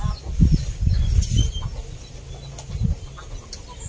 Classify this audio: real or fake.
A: real